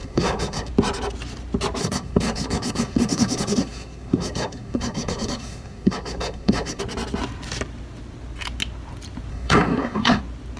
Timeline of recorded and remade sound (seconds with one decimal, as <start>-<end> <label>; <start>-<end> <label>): 0.0-0.7 remade; 0.7-1.8 recorded; 1.8-6.8 remade; 6.8-9.3 recorded; 9.3-10.2 remade; 10.2-10.6 recorded